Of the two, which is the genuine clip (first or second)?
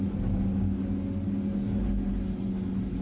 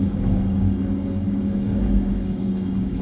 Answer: first